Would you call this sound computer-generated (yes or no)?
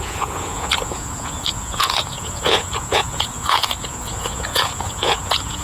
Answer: yes